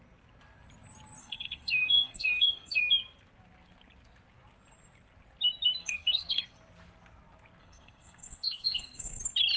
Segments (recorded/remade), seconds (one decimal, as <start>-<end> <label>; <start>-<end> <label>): 0.0-1.2 recorded; 1.2-2.8 remade; 2.8-5.8 recorded; 5.8-6.4 remade; 6.4-7.6 recorded; 7.6-9.2 remade; 9.2-9.6 recorded